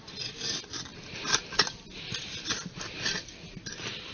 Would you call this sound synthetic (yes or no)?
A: no